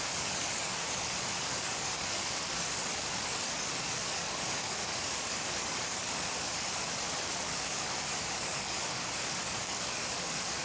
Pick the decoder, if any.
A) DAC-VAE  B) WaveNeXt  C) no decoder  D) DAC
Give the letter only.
D